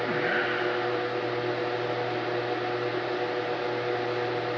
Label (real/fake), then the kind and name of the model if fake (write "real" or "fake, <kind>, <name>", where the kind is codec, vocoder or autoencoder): real